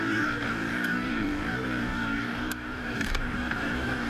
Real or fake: fake